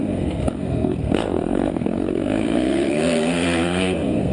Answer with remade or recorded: remade